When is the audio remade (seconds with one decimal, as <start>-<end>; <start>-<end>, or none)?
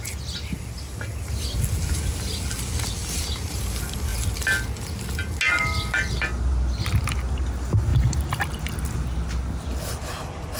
3.0-3.6; 7.9-8.6